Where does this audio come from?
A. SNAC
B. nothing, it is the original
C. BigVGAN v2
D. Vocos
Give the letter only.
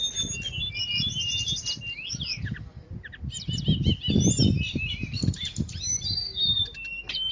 B